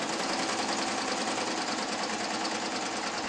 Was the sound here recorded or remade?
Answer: recorded